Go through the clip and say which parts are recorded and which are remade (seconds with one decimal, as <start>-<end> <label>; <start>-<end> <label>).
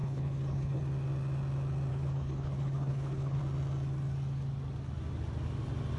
0.0-0.8 remade; 0.8-1.9 recorded; 1.9-3.4 remade; 3.4-6.0 recorded